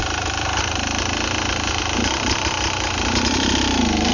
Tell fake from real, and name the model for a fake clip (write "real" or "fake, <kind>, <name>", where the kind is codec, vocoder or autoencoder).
fake, vocoder, BigVGAN v2